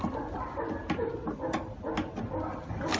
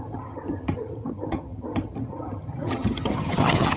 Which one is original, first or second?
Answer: first